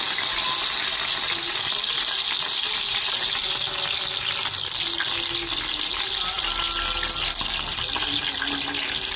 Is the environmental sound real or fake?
real